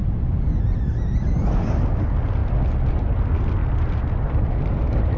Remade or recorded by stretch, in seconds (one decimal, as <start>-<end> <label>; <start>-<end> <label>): 0.0-5.2 recorded